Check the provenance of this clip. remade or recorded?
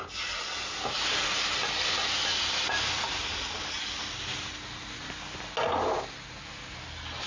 recorded